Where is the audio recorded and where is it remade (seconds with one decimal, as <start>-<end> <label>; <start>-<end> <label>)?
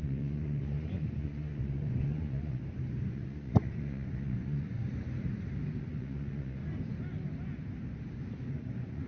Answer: 0.0-2.6 remade; 2.6-3.1 recorded; 3.1-4.8 remade; 4.8-5.8 recorded; 5.8-6.6 remade; 6.6-8.5 recorded; 8.5-9.1 remade